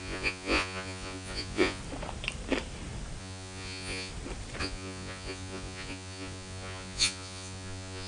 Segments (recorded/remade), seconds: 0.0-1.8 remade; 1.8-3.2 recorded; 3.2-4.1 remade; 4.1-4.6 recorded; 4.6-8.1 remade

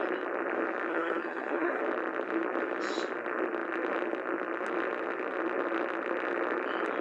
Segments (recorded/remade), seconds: 0.0-0.9 recorded; 0.9-1.8 remade; 1.8-7.0 recorded

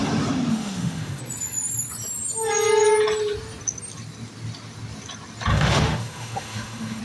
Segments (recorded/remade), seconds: 0.0-0.5 recorded; 0.5-1.2 remade; 1.2-5.5 recorded; 5.5-7.0 remade

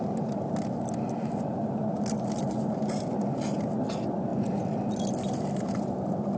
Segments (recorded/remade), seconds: 0.0-6.4 recorded

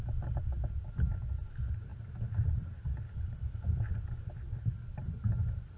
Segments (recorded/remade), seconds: 0.0-5.8 recorded

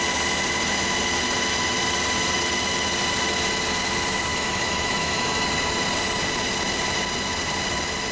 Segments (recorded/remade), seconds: 0.0-4.3 recorded; 4.3-5.5 remade; 5.5-8.1 recorded